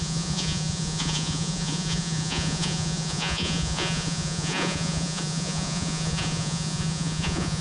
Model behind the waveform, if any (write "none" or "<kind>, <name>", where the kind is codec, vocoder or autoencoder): vocoder, Vocos